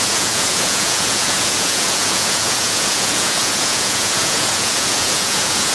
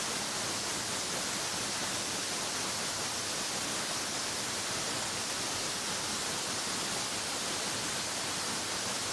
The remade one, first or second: first